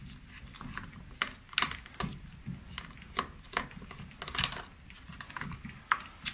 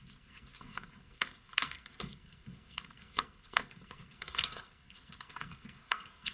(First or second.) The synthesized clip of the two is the second